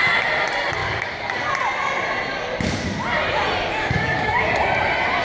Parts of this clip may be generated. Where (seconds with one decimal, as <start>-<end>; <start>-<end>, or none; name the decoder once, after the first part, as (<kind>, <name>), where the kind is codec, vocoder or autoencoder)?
0.8-1.5 (codec, DAC); 3.8-4.5